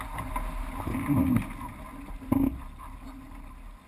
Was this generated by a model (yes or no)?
no